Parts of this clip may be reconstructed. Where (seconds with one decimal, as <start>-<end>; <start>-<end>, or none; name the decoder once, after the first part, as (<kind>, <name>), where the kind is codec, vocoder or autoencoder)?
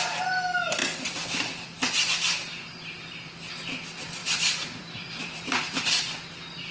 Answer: 0.8-3.1 (vocoder, BigVGAN v2); 4.2-5.6